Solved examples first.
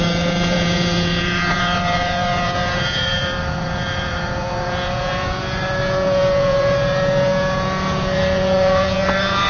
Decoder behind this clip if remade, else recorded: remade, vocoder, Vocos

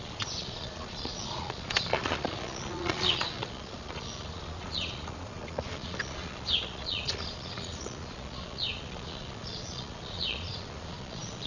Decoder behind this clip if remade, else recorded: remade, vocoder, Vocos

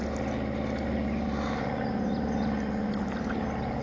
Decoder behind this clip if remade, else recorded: recorded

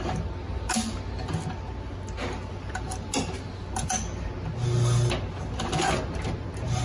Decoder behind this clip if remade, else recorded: recorded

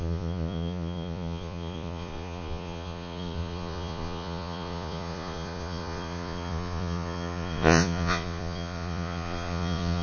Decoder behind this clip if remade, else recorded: remade, vocoder, Vocos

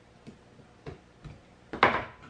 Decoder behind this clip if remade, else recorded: recorded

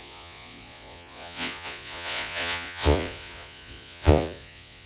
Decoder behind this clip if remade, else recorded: remade, vocoder, Vocos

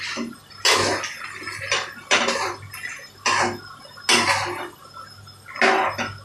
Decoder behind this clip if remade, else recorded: recorded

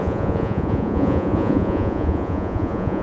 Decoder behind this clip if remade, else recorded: remade, vocoder, Vocos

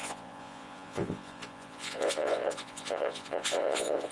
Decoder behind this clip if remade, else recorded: remade, vocoder, Vocos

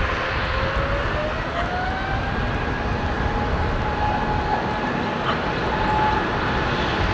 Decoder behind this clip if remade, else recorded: recorded